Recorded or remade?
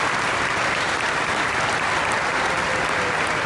recorded